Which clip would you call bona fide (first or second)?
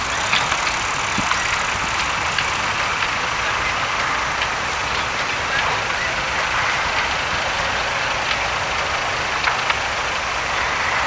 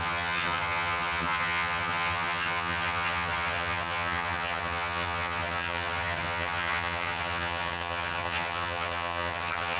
first